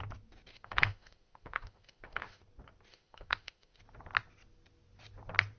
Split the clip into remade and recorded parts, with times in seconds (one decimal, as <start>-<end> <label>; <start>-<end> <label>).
0.0-0.5 recorded; 0.5-2.4 remade; 2.4-2.9 recorded; 2.9-3.8 remade; 3.8-5.6 recorded